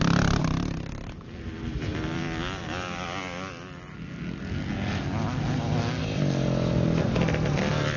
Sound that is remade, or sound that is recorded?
recorded